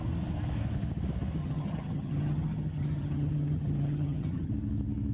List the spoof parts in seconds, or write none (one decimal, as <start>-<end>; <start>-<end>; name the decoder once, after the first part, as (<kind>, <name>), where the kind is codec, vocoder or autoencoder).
1.4-4.5 (vocoder, HiFi-GAN)